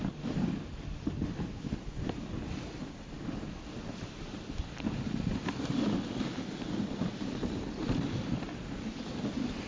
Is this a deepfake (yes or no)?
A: no